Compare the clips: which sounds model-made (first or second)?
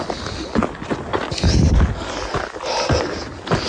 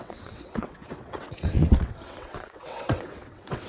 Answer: second